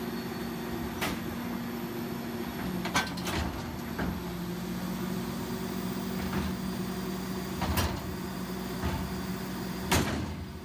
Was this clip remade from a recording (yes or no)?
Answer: no